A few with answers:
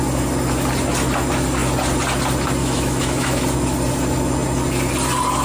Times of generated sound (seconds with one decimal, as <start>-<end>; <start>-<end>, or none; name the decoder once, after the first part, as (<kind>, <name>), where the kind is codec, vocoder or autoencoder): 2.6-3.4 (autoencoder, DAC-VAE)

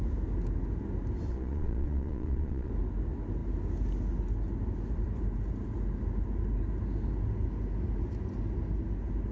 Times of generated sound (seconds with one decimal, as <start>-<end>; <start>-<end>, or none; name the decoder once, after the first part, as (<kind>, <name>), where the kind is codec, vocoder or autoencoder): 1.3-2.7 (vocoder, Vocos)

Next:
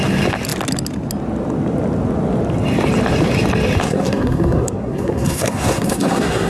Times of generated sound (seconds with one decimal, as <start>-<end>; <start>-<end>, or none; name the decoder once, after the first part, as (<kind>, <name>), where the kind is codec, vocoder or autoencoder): 3.8-6.5 (codec, SNAC)